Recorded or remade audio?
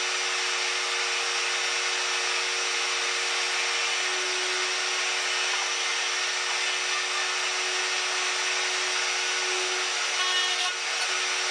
recorded